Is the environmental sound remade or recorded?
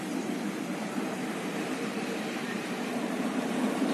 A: remade